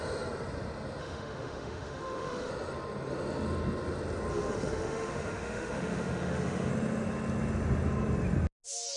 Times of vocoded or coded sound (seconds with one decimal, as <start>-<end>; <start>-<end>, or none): 1.0-2.5; 4.3-6.7